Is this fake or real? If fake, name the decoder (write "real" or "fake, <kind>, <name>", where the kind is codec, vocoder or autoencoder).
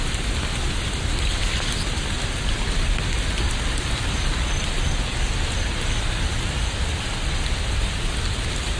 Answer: real